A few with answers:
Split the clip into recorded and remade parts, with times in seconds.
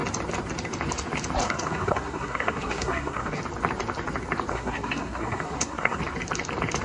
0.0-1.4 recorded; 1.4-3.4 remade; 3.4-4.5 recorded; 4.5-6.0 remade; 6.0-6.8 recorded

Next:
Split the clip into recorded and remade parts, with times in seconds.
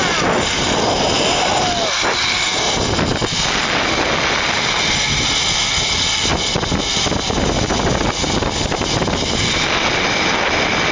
0.0-10.9 recorded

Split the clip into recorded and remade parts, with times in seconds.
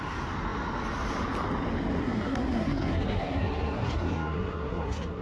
0.0-2.0 recorded; 2.0-5.2 remade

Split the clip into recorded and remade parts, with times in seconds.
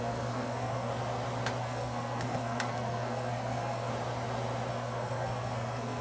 0.0-0.9 remade; 0.9-1.6 recorded; 1.6-3.9 remade; 3.9-4.7 recorded; 4.7-6.0 remade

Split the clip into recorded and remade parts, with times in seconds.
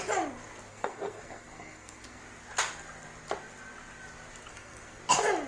0.0-0.7 recorded; 0.7-2.2 remade; 2.2-4.5 recorded; 4.5-5.0 remade; 5.0-5.5 recorded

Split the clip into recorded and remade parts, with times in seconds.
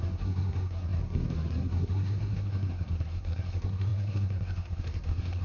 0.0-5.4 remade